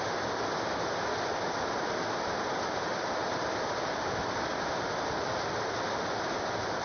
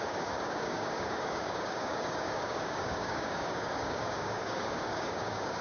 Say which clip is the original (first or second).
first